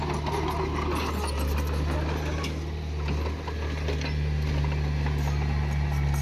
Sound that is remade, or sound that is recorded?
recorded